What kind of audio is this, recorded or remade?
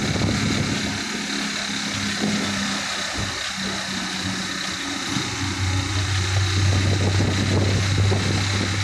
recorded